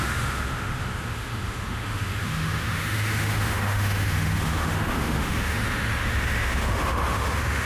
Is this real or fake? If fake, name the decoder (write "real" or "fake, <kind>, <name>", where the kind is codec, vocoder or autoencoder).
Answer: fake, autoencoder, DAC-VAE